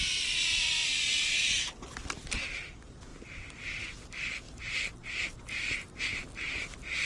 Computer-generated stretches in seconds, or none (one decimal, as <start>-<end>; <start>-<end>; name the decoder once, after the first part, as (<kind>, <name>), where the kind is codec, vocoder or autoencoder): 3.1-6.0 (vocoder, BigVGAN v2)